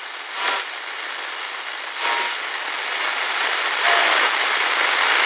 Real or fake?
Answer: real